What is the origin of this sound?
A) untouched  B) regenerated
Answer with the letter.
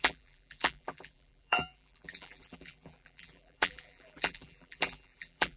B